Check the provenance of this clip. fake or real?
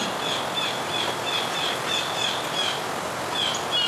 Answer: real